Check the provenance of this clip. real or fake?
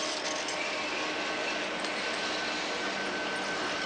real